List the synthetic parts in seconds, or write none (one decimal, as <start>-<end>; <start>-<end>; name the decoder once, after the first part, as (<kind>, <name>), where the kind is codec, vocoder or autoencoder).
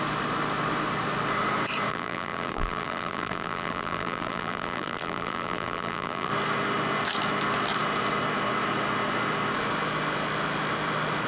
1.9-6.3 (vocoder, BigVGAN v2)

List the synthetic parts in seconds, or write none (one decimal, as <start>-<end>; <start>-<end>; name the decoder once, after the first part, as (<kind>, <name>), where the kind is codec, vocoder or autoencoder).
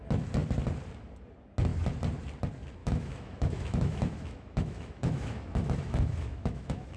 2.8-7.0 (autoencoder, DAC-VAE)